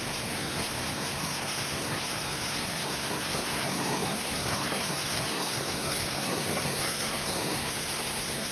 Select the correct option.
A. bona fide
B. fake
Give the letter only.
B